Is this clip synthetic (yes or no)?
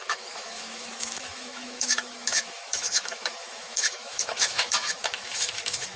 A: yes